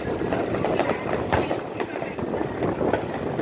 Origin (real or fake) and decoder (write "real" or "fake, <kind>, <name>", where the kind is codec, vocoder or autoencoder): real